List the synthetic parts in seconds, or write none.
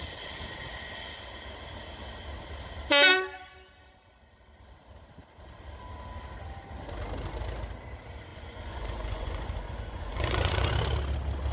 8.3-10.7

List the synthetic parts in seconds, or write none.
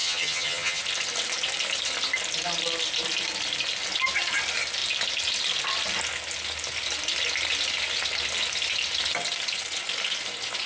0.0-0.8